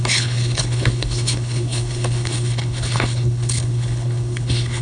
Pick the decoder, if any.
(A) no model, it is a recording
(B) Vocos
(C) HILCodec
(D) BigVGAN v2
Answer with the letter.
C